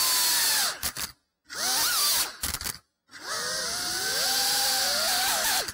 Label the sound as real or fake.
real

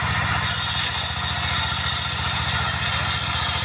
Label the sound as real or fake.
real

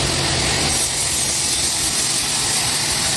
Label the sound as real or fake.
real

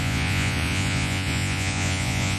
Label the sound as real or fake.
fake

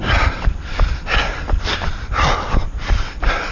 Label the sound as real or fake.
real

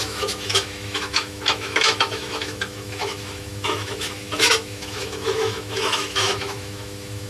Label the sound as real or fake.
fake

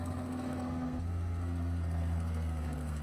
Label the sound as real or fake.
fake